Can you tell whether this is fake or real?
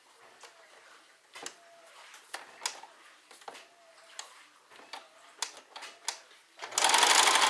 real